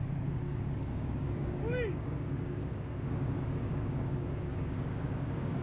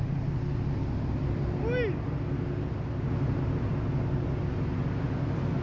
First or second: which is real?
second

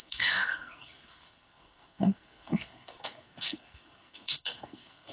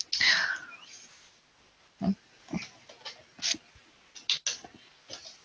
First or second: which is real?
second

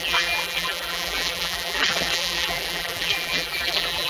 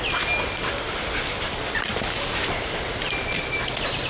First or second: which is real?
second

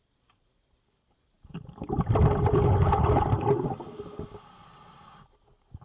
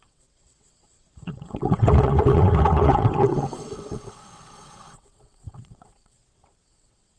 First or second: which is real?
first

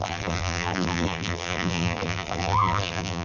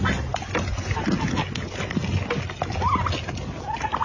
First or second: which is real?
second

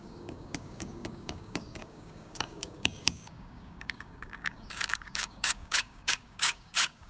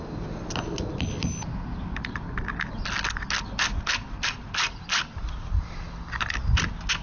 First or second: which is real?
second